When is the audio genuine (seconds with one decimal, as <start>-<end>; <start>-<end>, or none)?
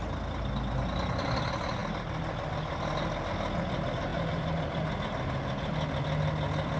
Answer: 0.0-6.8